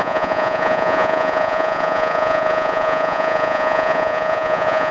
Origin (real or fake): fake